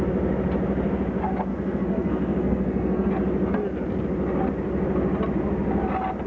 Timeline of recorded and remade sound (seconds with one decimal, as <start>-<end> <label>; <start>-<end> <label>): 0.0-1.5 recorded; 1.5-3.1 remade; 3.1-6.3 recorded